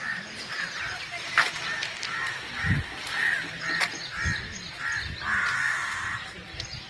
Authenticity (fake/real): real